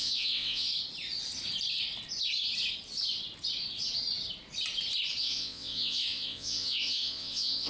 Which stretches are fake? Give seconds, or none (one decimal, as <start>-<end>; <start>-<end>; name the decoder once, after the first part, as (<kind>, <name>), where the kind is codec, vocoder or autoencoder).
0.0-0.7 (vocoder, WaveNeXt); 5.2-7.7